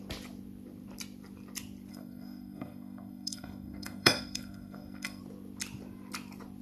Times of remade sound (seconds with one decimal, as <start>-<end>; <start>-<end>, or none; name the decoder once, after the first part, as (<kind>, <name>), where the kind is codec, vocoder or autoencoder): 1.9-5.2 (codec, SNAC)